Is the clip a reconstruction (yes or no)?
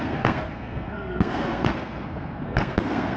yes